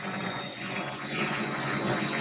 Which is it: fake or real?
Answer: fake